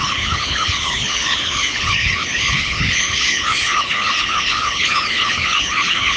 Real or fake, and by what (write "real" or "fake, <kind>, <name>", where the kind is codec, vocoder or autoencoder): fake, codec, HILCodec